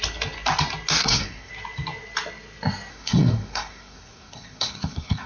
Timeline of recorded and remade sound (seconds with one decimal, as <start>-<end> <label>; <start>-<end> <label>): 0.0-1.0 recorded; 1.0-1.5 remade; 1.5-2.9 recorded; 2.9-5.3 remade